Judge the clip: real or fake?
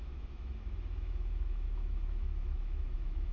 fake